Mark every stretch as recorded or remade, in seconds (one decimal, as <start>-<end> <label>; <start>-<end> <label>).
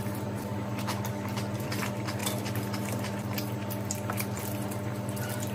0.0-5.5 remade